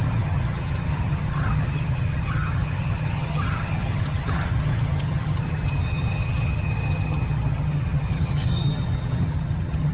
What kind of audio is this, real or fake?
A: fake